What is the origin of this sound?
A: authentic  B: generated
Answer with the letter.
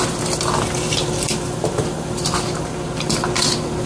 A